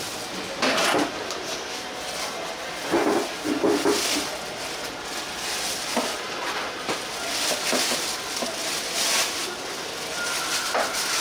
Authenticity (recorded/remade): recorded